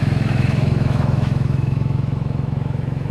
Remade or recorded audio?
remade